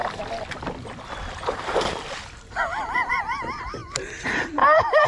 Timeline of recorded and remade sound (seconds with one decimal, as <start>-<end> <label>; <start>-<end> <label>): 0.0-3.1 recorded; 3.1-5.1 remade